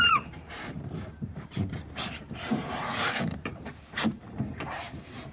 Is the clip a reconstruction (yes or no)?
yes